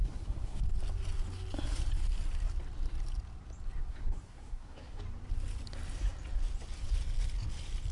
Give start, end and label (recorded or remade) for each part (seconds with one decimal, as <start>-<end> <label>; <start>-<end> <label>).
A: 0.0-0.6 remade; 0.6-3.9 recorded; 3.9-5.0 remade; 5.0-7.9 recorded